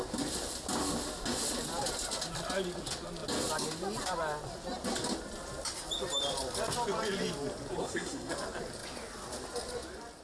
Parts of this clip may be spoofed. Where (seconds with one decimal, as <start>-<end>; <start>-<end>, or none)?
7.8-8.3